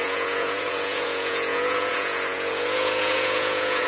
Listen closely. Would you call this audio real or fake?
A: fake